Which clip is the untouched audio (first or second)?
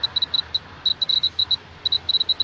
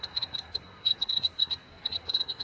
first